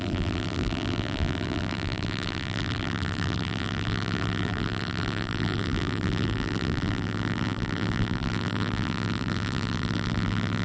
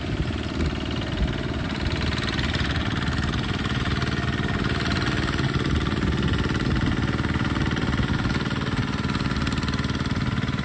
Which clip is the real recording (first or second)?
second